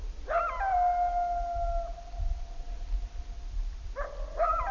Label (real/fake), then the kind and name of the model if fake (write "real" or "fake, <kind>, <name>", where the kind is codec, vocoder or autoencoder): real